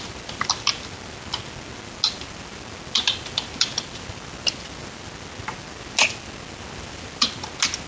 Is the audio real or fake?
real